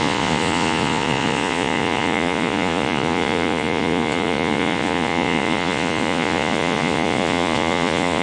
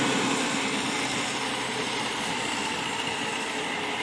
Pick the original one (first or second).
second